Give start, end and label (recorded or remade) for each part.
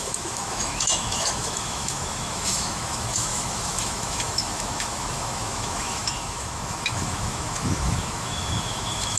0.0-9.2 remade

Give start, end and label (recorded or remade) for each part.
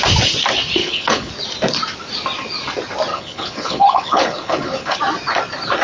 0.0-0.8 recorded; 0.8-1.3 remade; 1.3-3.1 recorded; 3.1-5.0 remade; 5.0-5.8 recorded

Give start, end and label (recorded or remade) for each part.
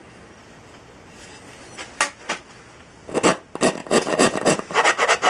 0.0-3.8 recorded; 3.8-4.5 remade; 4.5-5.3 recorded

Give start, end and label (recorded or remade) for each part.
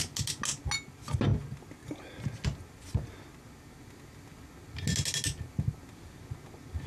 0.0-6.9 recorded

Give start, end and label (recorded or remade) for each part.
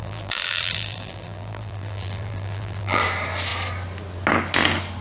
0.0-3.0 remade; 3.0-5.0 recorded